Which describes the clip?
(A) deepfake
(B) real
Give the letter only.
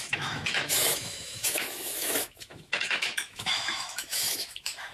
A